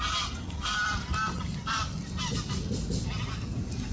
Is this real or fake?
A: real